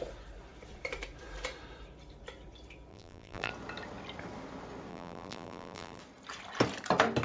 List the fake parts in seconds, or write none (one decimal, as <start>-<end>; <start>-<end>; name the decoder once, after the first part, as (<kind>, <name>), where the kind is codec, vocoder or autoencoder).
2.9-3.5 (vocoder, BigVGAN v2); 4.9-6.0